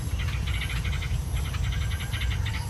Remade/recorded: remade